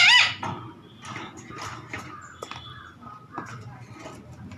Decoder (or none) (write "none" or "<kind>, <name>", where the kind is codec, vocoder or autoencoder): none